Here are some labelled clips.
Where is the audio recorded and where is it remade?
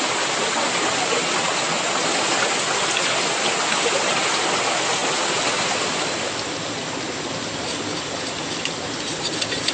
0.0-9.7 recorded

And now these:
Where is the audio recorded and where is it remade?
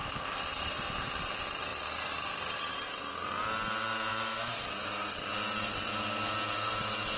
0.0-7.2 recorded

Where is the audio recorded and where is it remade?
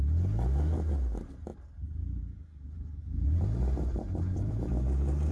0.0-1.5 recorded; 1.5-4.7 remade; 4.7-5.3 recorded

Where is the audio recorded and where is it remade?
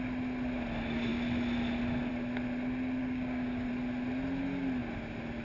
0.0-3.0 recorded; 3.0-3.7 remade; 3.7-5.4 recorded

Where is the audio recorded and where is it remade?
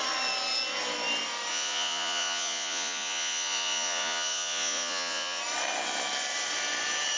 0.0-1.5 recorded; 1.5-5.4 remade; 5.4-7.2 recorded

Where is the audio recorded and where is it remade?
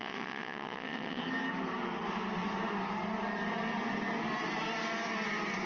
0.0-1.2 remade; 1.2-5.7 recorded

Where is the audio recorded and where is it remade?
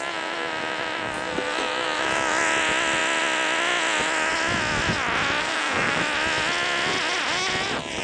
0.0-5.4 recorded; 5.4-6.0 remade; 6.0-8.0 recorded